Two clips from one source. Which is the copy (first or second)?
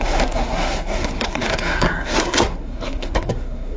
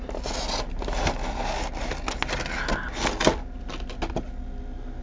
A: first